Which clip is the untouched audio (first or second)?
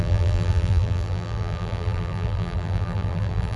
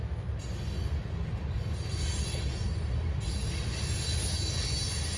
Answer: second